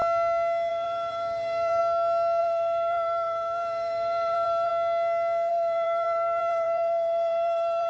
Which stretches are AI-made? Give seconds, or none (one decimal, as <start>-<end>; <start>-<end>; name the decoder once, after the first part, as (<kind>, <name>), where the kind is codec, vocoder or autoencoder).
0.7-1.8 (vocoder, BigVGAN v2); 2.4-4.7; 5.5-7.9